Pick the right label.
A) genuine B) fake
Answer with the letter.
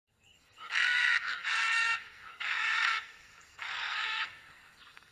B